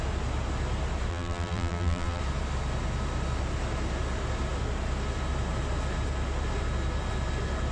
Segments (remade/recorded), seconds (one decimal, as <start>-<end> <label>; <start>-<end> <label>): 0.0-1.1 recorded; 1.1-2.2 remade; 2.2-7.7 recorded